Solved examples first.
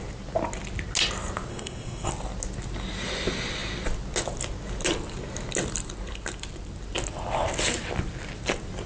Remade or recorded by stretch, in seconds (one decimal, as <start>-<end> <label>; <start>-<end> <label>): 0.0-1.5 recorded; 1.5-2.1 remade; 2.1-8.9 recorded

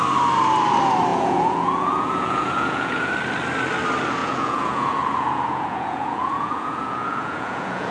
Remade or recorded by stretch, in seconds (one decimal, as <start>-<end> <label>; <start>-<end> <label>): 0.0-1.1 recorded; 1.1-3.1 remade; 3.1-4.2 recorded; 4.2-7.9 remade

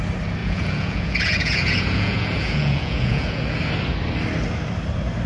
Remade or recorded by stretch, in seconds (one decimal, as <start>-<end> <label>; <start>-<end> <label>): 0.0-0.4 recorded; 0.4-3.6 remade; 3.6-5.3 recorded

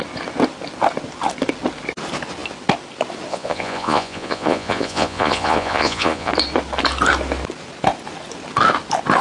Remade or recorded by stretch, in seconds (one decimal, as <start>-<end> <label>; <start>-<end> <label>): 0.0-3.3 recorded; 3.3-6.3 remade; 6.3-9.2 recorded